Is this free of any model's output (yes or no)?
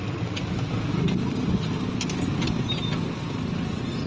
yes